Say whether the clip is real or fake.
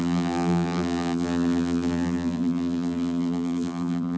fake